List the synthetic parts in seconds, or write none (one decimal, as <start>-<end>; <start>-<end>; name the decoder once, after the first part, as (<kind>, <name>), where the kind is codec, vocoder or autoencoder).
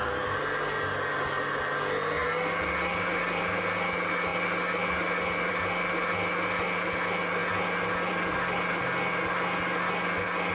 none